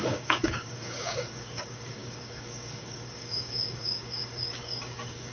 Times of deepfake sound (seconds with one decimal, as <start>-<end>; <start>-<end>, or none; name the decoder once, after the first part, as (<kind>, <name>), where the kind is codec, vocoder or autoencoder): 0.0-5.3 (codec, DAC)